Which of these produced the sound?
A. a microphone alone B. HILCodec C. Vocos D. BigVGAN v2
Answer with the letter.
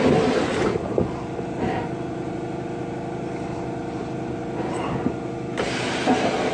A